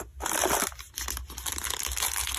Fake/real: real